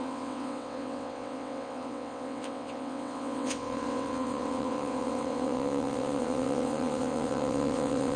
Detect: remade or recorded remade